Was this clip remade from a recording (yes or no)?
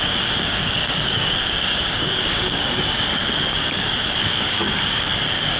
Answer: yes